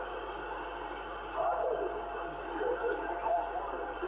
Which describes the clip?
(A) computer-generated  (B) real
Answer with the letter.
B